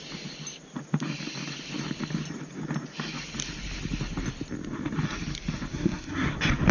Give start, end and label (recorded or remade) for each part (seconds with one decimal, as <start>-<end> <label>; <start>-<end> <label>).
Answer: 0.0-5.7 recorded; 5.7-6.3 remade; 6.3-6.7 recorded